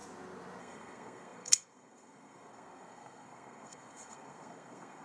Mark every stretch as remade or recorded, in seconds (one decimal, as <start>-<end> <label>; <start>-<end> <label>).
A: 0.0-0.6 recorded; 0.6-5.0 remade